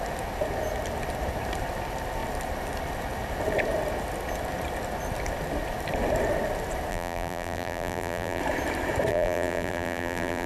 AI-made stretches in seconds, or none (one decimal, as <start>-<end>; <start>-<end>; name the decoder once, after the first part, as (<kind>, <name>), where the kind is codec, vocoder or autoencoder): 6.9-8.4 (vocoder, BigVGAN v2); 9.1-10.5